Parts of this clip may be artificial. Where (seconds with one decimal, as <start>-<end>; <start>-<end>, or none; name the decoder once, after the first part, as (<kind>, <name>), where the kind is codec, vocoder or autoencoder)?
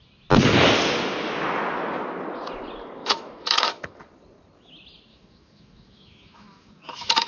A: 3.0-4.0 (autoencoder, DAC-VAE); 5.1-7.3